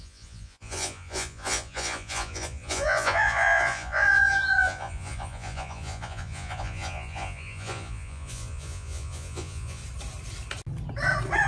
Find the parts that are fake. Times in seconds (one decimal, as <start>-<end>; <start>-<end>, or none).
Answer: 0.0-9.8